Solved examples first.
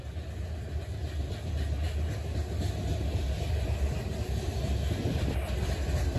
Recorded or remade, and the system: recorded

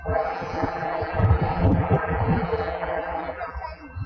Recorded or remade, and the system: remade, vocoder, BigVGAN v2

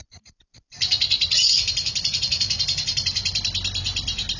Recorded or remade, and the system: recorded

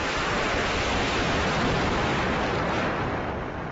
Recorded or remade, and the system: remade, vocoder, BigVGAN v2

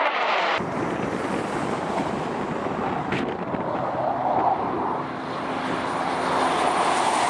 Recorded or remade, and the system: recorded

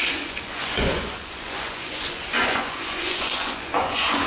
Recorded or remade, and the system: remade, vocoder, Vocos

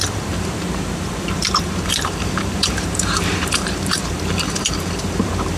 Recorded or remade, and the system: remade, vocoder, BigVGAN v2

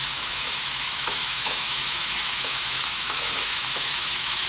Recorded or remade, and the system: remade, autoencoder, DAC-VAE